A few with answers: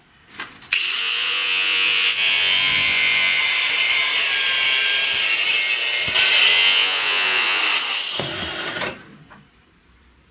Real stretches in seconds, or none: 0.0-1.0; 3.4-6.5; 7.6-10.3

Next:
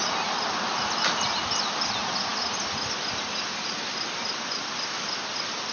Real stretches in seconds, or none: 0.0-5.7